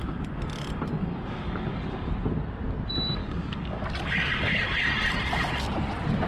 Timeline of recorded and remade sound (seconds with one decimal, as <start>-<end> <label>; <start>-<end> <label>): 0.0-1.0 recorded; 1.0-2.1 remade; 2.1-3.2 recorded; 3.2-3.8 remade; 3.8-6.3 recorded